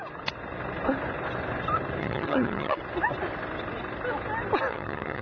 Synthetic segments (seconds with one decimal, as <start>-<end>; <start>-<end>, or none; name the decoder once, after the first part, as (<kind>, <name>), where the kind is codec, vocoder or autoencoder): 2.0-2.8 (vocoder, HiFi-GAN); 4.7-5.2